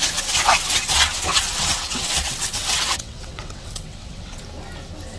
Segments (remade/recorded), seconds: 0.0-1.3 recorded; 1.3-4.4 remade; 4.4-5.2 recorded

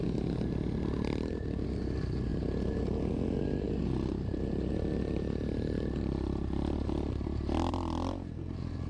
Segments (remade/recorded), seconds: 0.0-8.9 recorded

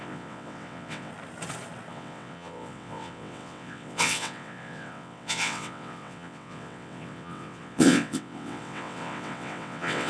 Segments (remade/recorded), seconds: 0.0-1.1 remade; 1.1-1.9 recorded; 1.9-10.1 remade

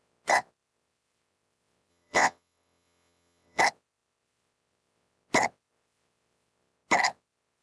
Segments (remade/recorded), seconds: 0.0-1.9 recorded; 1.9-3.6 remade; 3.6-7.6 recorded

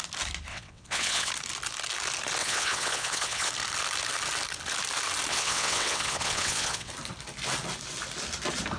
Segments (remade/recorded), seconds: 0.0-0.5 recorded; 0.5-1.3 remade; 1.3-2.4 recorded; 2.4-3.5 remade; 3.5-5.3 recorded; 5.3-6.9 remade; 6.9-8.8 recorded

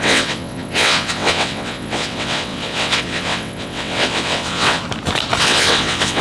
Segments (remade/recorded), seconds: 0.0-4.8 remade; 4.8-5.4 recorded; 5.4-6.2 remade

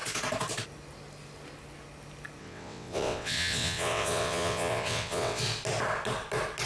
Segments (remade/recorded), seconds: 0.0-2.4 recorded; 2.4-5.4 remade; 5.4-6.7 recorded